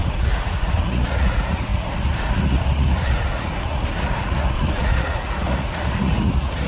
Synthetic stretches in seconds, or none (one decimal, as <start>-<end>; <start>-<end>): 0.0-6.7